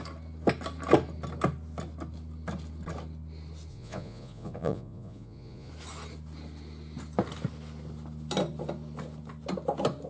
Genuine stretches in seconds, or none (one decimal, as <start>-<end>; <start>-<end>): 0.0-3.7; 5.7-10.1